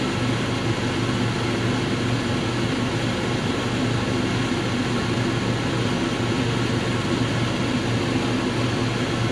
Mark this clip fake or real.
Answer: real